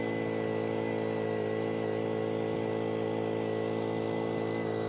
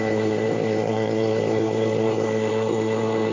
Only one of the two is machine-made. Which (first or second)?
second